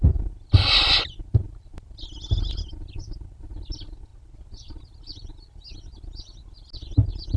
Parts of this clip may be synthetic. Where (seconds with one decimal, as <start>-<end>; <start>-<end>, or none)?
none